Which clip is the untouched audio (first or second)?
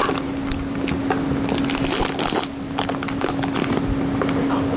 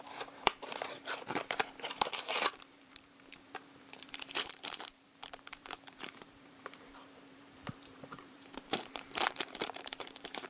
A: first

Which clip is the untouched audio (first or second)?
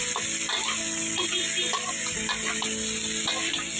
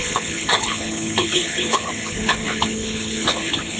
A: first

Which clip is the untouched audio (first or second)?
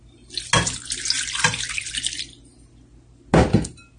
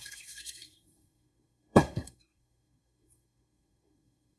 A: first